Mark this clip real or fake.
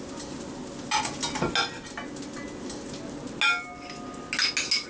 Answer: real